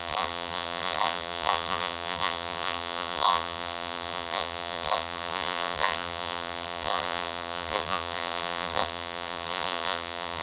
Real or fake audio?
fake